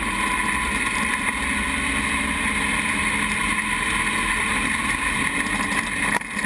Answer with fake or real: real